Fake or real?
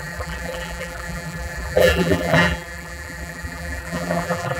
fake